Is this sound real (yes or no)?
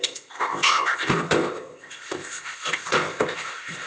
no